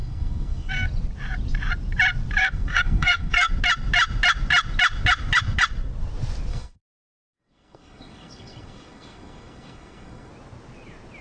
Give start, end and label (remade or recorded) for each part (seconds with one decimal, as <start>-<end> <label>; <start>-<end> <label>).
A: 0.0-0.7 remade; 0.7-2.4 recorded; 2.4-3.5 remade; 3.5-6.5 recorded; 6.5-10.3 remade; 10.3-11.2 recorded